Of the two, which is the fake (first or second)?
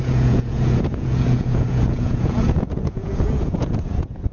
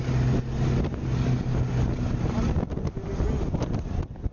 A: first